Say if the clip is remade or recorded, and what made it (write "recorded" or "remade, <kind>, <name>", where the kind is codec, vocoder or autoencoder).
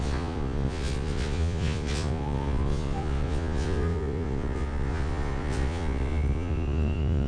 remade, vocoder, Vocos